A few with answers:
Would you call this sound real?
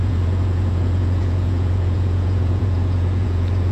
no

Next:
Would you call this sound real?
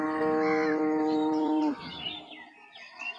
no